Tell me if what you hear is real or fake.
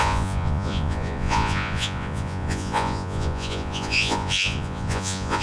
fake